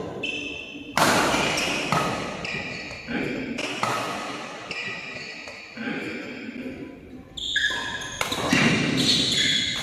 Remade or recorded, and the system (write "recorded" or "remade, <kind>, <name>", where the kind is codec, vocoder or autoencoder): recorded